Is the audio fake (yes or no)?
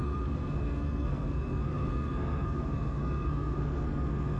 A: yes